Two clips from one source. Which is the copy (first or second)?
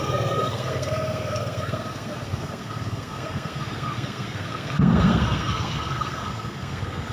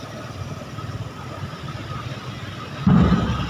first